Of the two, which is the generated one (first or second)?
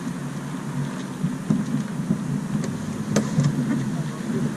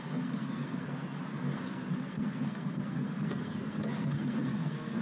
second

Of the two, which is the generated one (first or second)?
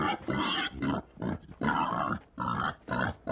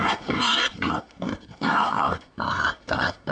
second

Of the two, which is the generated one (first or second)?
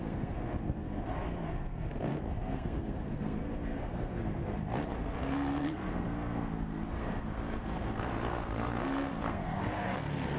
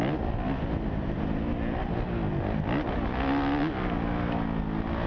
first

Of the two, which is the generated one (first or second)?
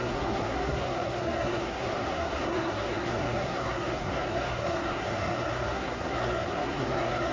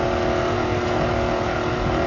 first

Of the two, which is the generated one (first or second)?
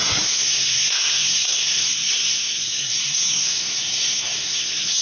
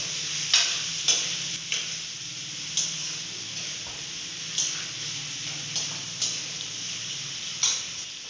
first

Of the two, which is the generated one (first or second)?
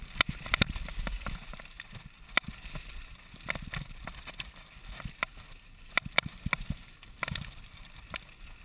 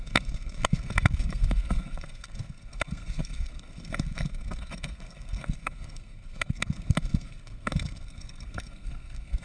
second